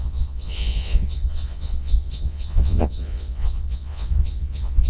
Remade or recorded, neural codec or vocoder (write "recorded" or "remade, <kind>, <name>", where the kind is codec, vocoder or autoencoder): remade, vocoder, Vocos